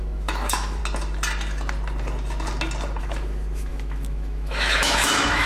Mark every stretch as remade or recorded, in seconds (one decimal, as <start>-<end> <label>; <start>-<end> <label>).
0.0-0.8 remade; 0.8-3.0 recorded; 3.0-5.5 remade